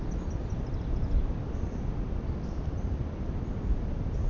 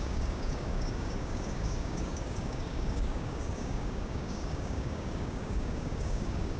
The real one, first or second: first